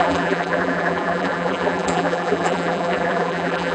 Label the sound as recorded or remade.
remade